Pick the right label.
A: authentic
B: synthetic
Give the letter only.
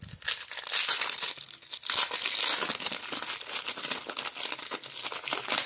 A